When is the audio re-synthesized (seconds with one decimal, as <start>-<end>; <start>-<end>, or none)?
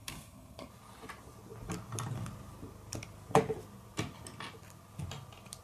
0.0-0.7